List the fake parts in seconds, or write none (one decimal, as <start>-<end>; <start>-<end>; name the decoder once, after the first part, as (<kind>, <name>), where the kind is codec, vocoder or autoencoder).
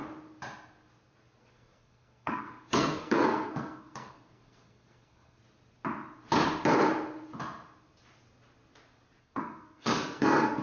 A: 1.4-5.4 (codec, SNAC); 9.2-10.6